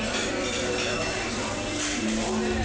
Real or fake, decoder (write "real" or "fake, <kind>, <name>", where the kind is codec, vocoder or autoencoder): real